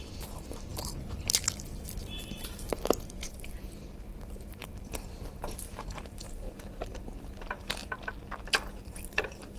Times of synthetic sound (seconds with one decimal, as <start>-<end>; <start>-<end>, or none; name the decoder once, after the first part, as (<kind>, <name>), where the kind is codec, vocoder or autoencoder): 0.0-7.8 (vocoder, BigVGAN v2); 8.8-9.6